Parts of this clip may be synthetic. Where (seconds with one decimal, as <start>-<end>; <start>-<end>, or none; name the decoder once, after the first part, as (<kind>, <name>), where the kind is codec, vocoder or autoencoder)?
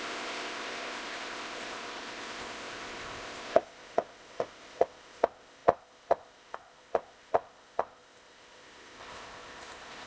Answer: 0.0-10.1 (codec, ZipCodec)